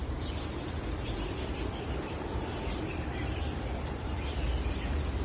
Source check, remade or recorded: remade